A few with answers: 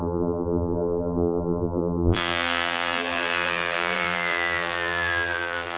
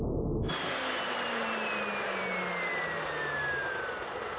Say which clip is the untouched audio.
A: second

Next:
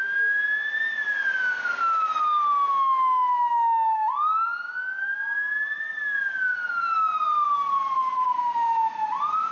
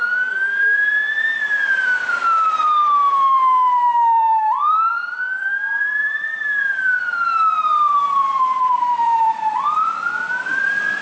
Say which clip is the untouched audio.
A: first